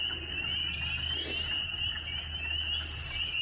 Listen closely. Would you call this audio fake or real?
real